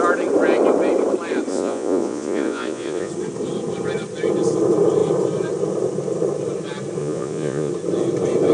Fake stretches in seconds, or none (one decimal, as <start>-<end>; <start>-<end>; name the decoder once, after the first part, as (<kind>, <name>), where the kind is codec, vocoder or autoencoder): 1.5-3.1 (vocoder, Vocos); 7.0-7.7